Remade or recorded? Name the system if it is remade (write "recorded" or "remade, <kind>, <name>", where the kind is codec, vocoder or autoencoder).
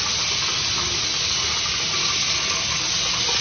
recorded